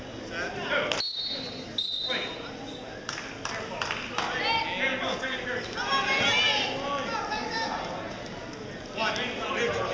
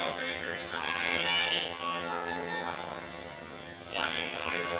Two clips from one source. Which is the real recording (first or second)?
first